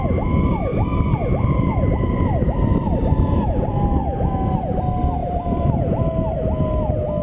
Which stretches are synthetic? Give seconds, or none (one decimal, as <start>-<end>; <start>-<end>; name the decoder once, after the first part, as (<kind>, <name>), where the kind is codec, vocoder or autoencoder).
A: 0.7-4.8 (vocoder, BigVGAN v2); 5.2-6.0